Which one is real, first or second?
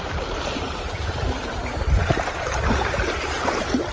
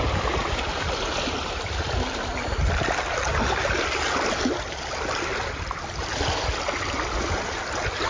second